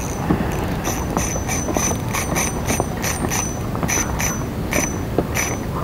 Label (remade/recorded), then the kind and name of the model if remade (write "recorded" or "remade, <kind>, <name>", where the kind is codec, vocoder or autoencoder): recorded